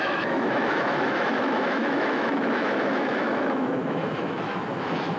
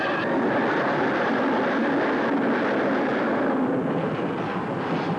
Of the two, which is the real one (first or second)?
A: second